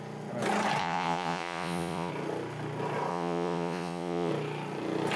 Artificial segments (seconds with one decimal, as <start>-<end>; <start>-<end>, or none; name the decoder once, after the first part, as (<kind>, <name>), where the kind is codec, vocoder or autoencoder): 0.8-2.1 (vocoder, Vocos); 3.1-4.3